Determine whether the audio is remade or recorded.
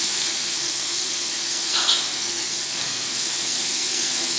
remade